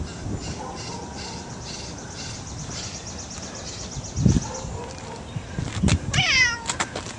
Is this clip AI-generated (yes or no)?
no